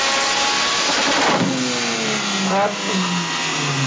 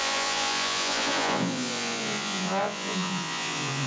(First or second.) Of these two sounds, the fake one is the second